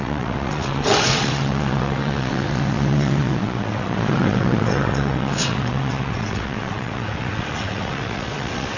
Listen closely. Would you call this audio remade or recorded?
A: remade